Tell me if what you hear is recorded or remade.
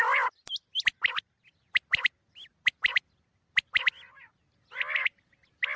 recorded